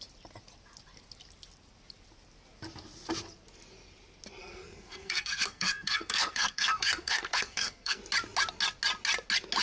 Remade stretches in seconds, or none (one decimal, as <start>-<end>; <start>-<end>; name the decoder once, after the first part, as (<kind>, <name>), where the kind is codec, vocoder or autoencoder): 4.4-8.0 (codec, SNAC)